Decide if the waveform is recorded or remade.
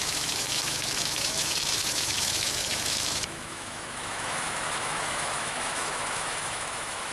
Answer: remade